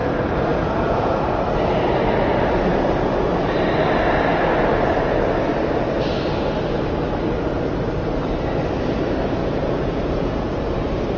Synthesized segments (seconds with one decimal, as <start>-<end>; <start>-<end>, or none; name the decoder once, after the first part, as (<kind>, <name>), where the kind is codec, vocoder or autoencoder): 0.5-1.2 (vocoder, Vocos); 9.4-10.6